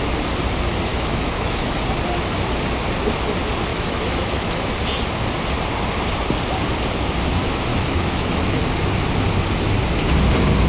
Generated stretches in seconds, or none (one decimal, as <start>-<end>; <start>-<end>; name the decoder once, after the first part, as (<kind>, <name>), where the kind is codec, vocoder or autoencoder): 0.9-1.8 (autoencoder, DAC-VAE); 3.7-4.7; 7.7-8.6